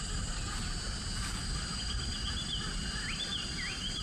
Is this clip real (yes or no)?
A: yes